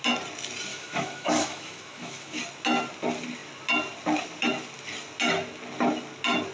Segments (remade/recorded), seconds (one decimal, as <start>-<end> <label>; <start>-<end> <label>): 0.0-0.7 recorded; 0.7-2.4 remade; 2.4-6.5 recorded